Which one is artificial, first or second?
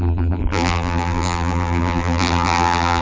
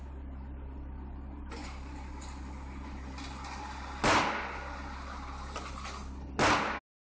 first